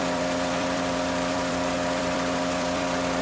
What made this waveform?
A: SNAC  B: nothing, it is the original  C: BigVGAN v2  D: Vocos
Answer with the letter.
C